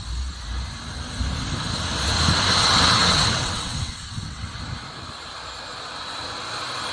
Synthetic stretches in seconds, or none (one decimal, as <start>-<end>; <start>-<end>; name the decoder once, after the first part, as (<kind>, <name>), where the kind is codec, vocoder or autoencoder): 2.7-4.5 (vocoder, WaveNeXt)